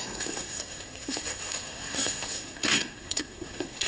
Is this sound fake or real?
fake